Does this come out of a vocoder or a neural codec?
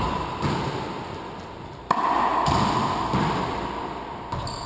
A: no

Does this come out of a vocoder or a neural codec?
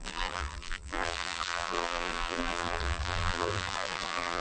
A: yes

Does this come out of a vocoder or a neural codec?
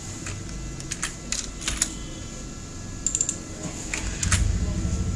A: no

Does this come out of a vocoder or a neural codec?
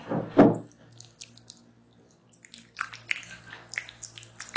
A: no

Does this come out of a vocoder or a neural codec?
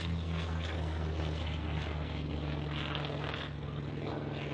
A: yes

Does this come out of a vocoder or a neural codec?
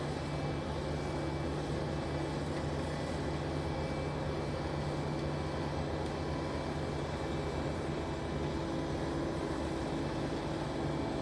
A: no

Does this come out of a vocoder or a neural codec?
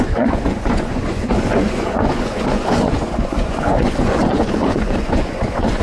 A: yes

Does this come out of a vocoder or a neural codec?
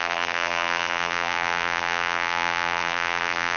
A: yes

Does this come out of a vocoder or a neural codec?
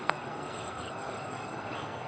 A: yes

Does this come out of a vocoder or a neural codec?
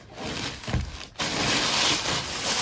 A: no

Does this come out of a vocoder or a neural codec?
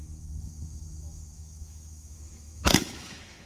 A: yes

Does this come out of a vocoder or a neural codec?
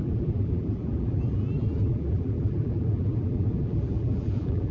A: yes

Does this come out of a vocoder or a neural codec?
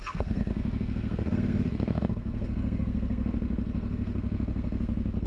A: yes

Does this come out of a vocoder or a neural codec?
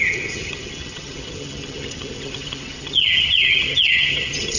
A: yes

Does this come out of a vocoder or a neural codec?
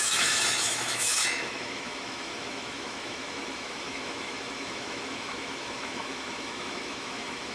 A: yes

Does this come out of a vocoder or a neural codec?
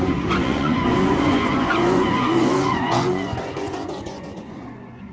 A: yes